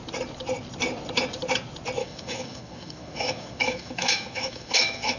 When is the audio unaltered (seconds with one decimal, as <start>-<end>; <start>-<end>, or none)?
0.0-2.0